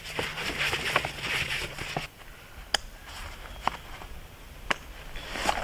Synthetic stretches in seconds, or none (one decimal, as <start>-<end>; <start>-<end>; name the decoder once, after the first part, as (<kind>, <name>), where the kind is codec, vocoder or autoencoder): 0.0-1.3 (vocoder, BigVGAN v2)